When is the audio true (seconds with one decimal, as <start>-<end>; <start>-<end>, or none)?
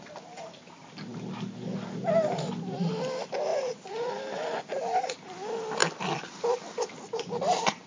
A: 0.0-3.5; 4.1-7.9